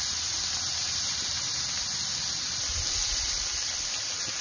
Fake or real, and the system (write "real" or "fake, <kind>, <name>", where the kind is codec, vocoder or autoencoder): real